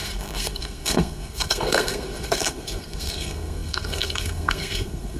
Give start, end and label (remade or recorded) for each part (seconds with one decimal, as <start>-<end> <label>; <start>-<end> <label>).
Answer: 0.0-5.2 remade